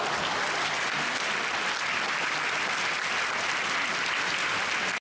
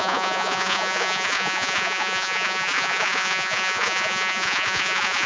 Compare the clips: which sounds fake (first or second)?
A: second